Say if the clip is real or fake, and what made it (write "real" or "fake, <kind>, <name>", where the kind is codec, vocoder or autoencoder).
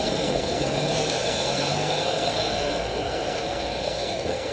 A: fake, codec, SNAC